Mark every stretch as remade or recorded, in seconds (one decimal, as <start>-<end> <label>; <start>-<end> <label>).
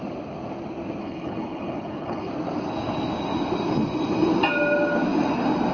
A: 0.0-1.0 recorded; 1.0-2.3 remade; 2.3-5.7 recorded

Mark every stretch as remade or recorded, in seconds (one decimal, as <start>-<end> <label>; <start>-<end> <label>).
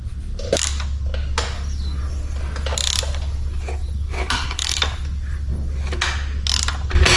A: 0.0-4.2 recorded; 4.2-4.8 remade; 4.8-7.2 recorded